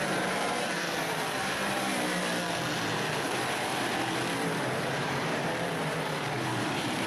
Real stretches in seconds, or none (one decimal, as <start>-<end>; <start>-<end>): 1.9-3.2; 3.9-4.6